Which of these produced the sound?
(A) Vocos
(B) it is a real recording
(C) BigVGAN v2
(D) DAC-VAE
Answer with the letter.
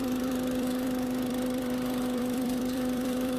C